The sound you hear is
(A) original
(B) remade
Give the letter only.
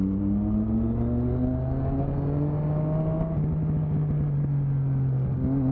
A